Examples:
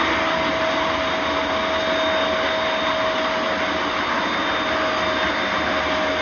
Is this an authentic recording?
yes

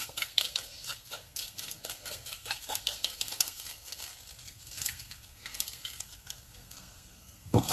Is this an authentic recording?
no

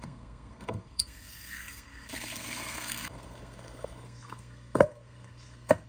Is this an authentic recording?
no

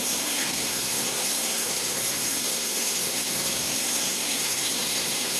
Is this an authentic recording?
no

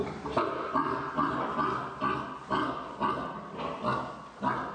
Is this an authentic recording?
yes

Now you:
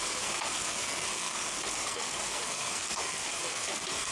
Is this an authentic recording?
no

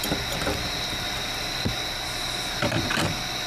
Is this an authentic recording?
yes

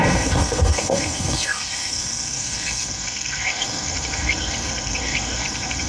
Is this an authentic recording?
no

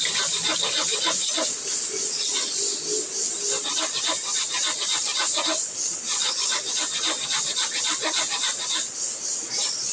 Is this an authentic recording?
yes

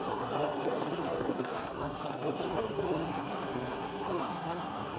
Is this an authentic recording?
no